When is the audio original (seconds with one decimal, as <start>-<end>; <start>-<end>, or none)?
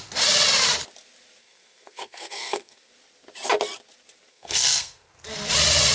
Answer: 0.0-1.4; 2.9-4.3; 5.1-5.9